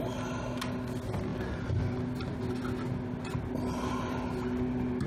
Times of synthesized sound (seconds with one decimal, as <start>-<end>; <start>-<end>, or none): none